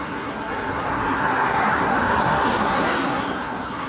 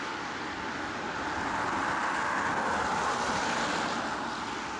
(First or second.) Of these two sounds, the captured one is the second